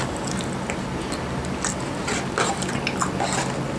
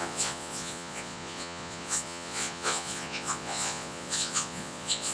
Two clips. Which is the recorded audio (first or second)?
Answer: first